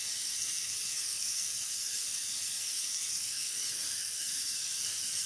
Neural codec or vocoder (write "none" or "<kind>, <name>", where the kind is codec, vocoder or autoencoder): codec, SNAC